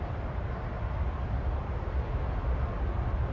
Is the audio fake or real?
real